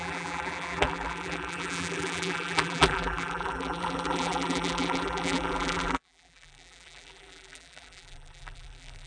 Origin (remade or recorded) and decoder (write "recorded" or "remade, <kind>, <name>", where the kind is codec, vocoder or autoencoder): remade, vocoder, BigVGAN v2